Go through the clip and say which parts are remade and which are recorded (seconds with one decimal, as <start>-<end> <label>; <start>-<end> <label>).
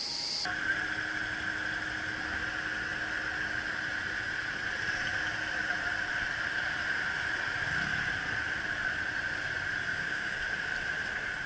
0.0-9.9 recorded; 9.9-10.4 remade; 10.4-11.5 recorded